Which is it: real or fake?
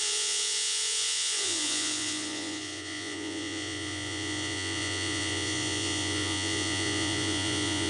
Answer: fake